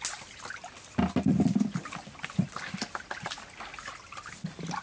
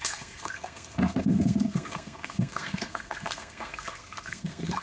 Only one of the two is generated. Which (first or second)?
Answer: second